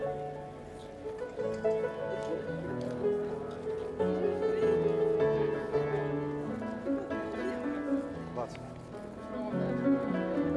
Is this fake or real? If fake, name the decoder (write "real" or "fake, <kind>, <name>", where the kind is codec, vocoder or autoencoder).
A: real